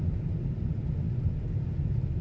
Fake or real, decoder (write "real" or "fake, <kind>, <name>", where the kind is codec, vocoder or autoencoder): real